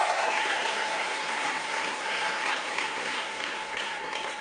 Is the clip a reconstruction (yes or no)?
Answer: yes